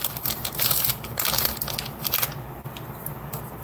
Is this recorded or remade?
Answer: recorded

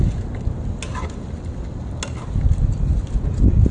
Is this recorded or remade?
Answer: recorded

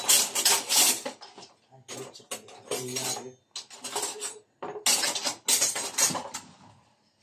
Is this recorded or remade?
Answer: recorded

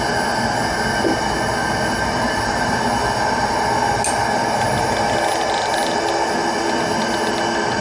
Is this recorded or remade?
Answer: recorded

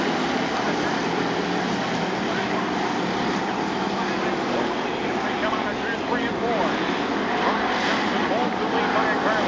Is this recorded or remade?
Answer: recorded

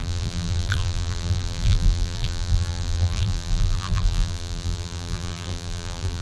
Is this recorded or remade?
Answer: remade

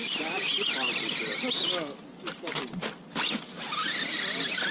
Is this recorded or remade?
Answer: recorded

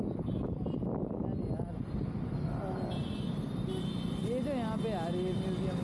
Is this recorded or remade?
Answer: recorded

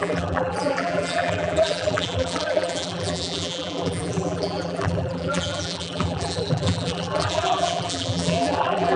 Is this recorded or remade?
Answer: remade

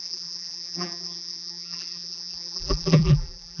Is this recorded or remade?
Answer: remade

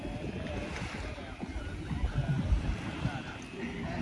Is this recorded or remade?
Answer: remade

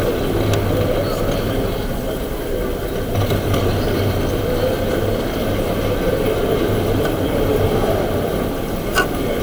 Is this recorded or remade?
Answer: recorded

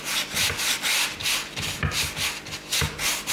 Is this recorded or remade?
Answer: recorded